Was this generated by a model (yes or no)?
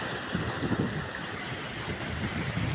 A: no